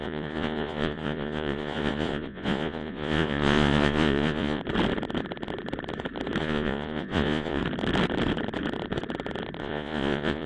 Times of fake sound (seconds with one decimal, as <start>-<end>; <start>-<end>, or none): 0.0-4.6; 6.4-7.6; 9.6-10.5

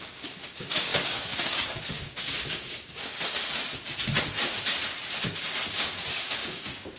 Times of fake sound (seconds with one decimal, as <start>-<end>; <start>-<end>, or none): 0.0-3.4; 5.7-7.0

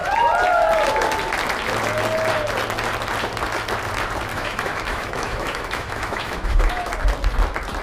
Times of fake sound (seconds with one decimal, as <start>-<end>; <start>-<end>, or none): 4.3-6.9

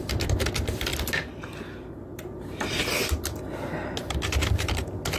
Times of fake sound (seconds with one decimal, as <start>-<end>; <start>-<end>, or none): none

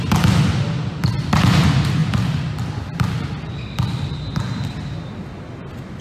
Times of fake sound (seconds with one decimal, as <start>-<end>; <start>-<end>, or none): 2.0-4.7